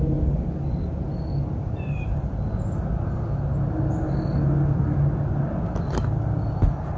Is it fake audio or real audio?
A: real